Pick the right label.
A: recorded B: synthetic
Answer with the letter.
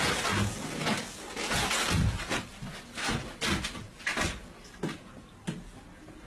A